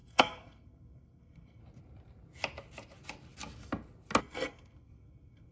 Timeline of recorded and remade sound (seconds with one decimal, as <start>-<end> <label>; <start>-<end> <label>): 0.0-1.6 remade; 1.6-4.2 recorded; 4.2-5.5 remade